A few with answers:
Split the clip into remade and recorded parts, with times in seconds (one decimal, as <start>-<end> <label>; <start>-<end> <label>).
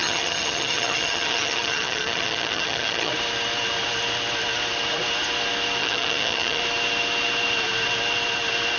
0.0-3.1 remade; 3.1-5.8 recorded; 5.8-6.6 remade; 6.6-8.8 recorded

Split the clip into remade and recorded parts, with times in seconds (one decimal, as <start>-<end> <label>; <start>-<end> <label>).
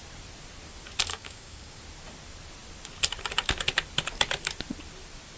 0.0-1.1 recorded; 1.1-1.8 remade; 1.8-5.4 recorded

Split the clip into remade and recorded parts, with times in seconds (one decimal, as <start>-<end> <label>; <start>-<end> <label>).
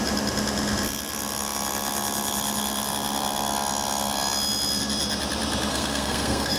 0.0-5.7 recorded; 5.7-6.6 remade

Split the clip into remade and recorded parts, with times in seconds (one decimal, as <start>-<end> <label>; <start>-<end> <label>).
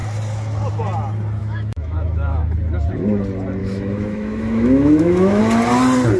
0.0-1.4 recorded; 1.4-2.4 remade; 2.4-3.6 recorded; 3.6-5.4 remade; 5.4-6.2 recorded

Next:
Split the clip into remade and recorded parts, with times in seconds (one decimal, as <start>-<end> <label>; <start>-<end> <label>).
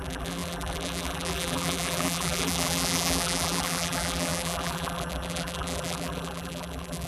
0.0-7.1 remade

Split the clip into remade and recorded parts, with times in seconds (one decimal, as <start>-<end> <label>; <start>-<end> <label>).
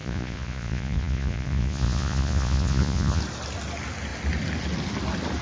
0.0-3.2 remade; 3.2-5.4 recorded